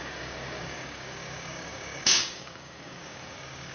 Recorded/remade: remade